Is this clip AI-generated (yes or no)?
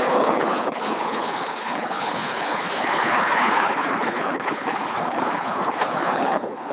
yes